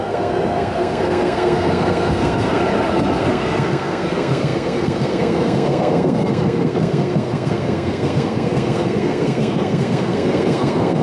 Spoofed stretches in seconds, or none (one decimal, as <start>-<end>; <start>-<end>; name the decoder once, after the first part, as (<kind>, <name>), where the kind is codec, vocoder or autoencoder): 0.0-2.6 (codec, SNAC); 3.2-11.0

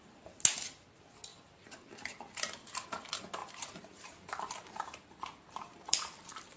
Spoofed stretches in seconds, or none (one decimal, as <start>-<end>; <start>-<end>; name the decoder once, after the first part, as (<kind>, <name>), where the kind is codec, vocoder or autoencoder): 3.4-6.6 (vocoder, BigVGAN v2)